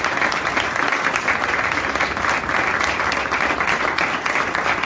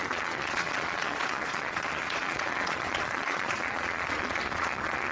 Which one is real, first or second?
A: first